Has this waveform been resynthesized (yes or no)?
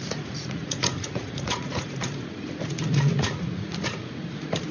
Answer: yes